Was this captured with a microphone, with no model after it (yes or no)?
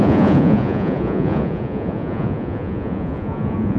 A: no